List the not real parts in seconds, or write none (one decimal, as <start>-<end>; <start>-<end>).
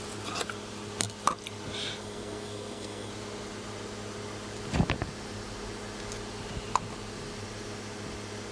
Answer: 2.0-3.1